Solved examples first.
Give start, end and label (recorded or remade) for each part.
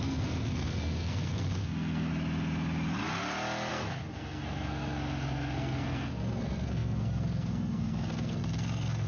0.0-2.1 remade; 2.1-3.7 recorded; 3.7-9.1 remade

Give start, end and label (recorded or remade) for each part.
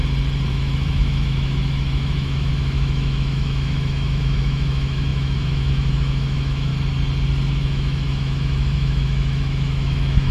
0.0-0.5 recorded; 0.5-6.7 remade; 6.7-7.5 recorded; 7.5-10.3 remade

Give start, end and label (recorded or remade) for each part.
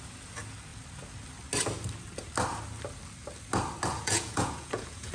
0.0-3.9 recorded; 3.9-5.1 remade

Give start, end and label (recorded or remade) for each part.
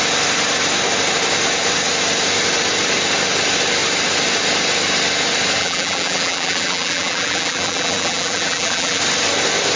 0.0-5.6 recorded; 5.6-9.0 remade; 9.0-9.8 recorded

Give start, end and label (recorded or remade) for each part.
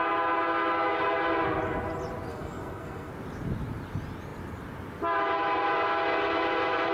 0.0-2.3 recorded; 2.3-3.1 remade; 3.1-6.9 recorded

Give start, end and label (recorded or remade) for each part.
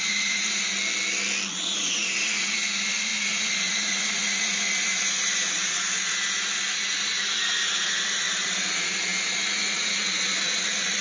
0.0-0.7 remade; 0.7-1.5 recorded; 1.5-11.0 remade